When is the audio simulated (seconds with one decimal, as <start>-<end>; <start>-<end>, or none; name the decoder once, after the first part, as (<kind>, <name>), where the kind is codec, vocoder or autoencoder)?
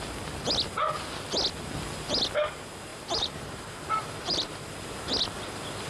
2.9-4.7 (vocoder, BigVGAN v2)